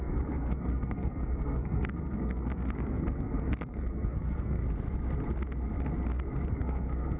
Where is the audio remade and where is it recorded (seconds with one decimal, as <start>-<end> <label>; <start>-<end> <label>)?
0.0-4.6 remade; 4.6-6.5 recorded; 6.5-7.2 remade